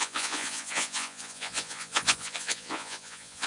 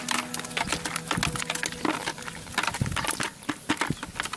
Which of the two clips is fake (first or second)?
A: first